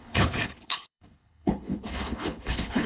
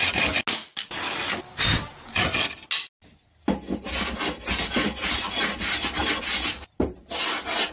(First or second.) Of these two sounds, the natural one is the second